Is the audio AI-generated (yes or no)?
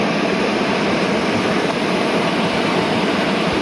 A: yes